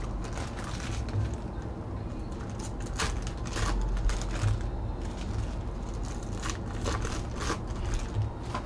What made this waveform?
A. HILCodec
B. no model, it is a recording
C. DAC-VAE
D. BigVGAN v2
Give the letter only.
B